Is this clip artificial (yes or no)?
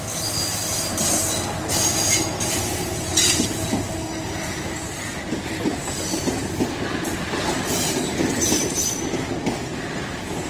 no